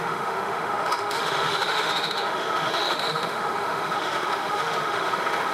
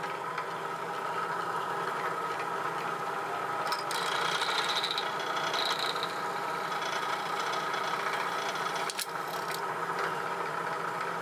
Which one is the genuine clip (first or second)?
second